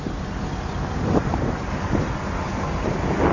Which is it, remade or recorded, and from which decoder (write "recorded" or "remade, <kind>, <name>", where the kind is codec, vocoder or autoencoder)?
recorded